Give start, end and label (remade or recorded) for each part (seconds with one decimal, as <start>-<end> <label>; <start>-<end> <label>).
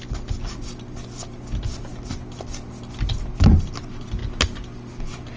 0.0-5.4 recorded